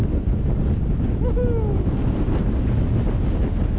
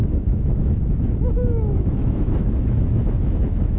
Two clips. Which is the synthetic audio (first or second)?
second